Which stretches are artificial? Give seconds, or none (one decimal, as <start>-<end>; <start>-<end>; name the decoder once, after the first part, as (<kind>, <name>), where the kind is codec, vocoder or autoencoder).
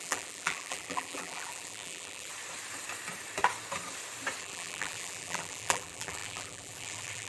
0.0-2.3 (vocoder, BigVGAN v2); 4.4-7.3